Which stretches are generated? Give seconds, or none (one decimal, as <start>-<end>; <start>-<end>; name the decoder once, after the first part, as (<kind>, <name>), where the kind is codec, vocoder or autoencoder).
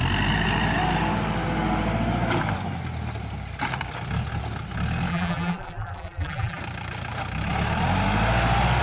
5.1-6.6 (vocoder, BigVGAN v2)